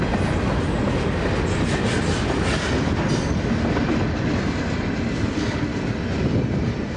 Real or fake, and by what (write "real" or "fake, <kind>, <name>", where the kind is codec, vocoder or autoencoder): real